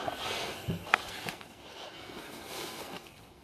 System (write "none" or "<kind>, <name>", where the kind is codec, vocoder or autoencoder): codec, SNAC